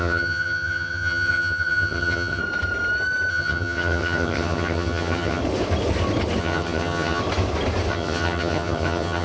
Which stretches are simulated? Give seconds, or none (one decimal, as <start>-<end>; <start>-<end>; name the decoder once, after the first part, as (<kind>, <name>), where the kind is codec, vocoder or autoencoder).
0.0-2.4 (vocoder, HiFi-GAN); 3.3-5.4; 6.4-7.2; 7.9-9.2